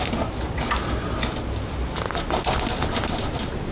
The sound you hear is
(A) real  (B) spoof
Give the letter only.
A